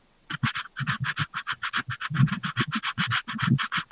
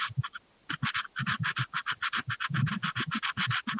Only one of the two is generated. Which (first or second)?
first